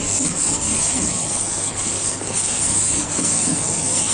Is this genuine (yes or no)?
no